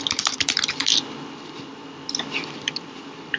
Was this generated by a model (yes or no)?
yes